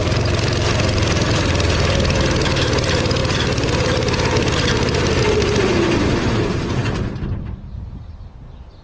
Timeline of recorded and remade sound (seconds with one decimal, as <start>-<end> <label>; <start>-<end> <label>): 0.0-8.8 remade